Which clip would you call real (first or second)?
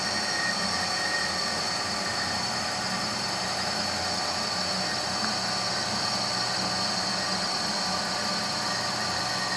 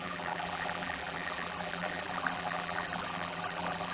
first